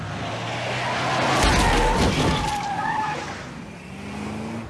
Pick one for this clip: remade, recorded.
recorded